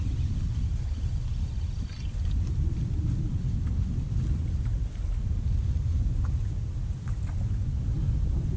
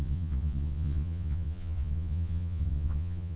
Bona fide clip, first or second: first